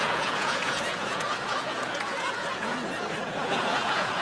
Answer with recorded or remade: remade